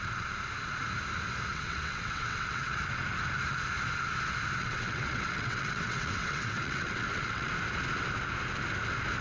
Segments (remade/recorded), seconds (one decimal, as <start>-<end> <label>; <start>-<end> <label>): 0.0-1.5 recorded; 1.5-2.8 remade; 2.8-4.6 recorded; 4.6-7.5 remade; 7.5-9.2 recorded